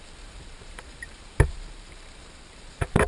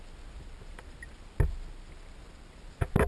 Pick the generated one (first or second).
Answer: first